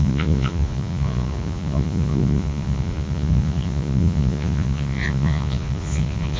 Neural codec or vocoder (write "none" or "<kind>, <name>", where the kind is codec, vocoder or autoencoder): vocoder, Vocos